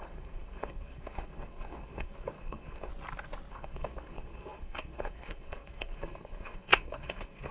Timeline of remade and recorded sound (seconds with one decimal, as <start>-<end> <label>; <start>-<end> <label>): 0.0-2.9 remade; 2.9-3.5 recorded; 3.5-7.5 remade